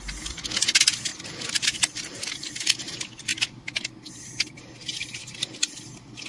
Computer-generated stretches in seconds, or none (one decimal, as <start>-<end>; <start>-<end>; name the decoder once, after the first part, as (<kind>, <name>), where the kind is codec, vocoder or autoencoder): none